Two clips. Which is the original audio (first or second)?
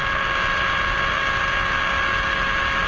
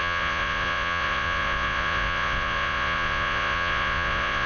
first